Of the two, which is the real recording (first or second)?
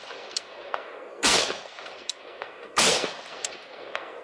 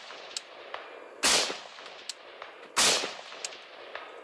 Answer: second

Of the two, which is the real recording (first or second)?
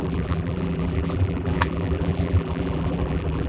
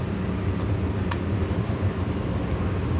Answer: second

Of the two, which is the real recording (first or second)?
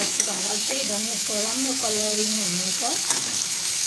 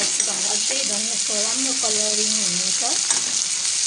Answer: second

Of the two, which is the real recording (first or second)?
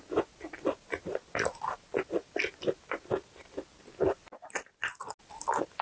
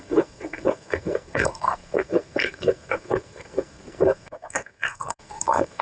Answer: first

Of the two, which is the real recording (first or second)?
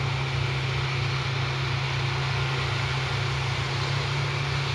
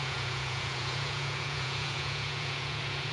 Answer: first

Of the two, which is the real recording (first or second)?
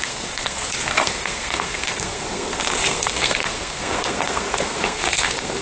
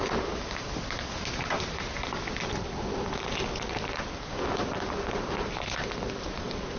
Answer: second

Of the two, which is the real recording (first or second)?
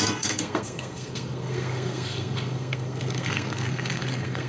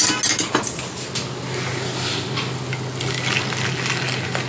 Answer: second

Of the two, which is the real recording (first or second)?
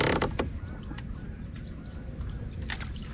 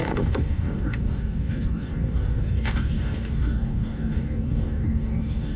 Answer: first